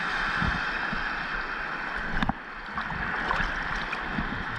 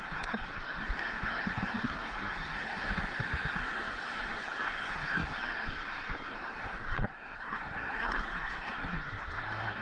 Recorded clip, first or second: first